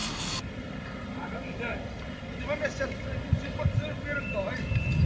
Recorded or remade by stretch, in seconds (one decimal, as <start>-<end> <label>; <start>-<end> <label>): 0.0-5.1 recorded